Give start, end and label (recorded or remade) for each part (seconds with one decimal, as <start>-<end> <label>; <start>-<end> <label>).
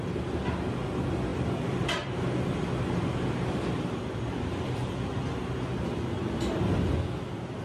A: 0.0-1.3 recorded; 1.3-5.2 remade; 5.2-7.6 recorded